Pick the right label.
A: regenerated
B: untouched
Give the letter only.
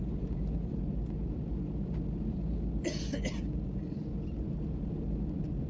B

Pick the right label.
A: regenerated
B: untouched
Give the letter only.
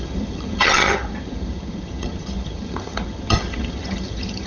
A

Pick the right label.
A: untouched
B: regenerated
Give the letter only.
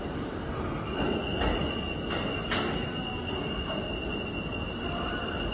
A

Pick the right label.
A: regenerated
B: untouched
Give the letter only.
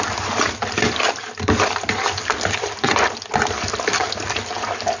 B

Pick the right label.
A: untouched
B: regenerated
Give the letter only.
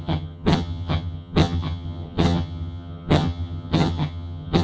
B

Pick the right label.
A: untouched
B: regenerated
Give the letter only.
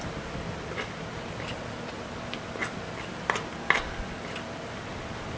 A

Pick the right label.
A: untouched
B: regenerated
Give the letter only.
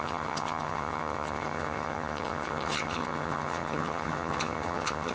B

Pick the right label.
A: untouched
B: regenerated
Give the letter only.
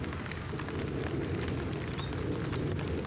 A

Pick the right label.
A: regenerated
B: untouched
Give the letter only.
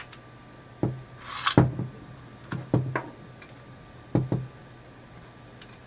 B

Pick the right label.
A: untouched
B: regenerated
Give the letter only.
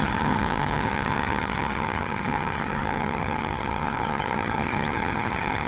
B